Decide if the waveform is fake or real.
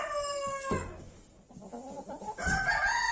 real